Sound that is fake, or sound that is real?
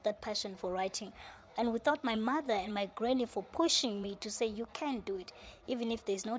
fake